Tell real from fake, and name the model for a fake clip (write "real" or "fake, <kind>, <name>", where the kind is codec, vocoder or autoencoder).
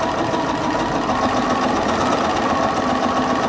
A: real